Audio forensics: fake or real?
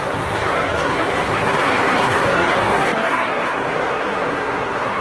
fake